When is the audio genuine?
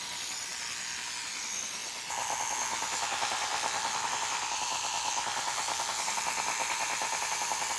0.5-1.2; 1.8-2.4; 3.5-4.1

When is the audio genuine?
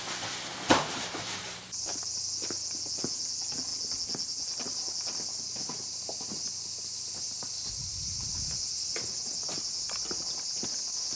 0.0-0.5; 2.0-11.2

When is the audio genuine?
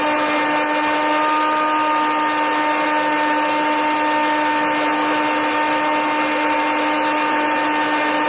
0.0-8.3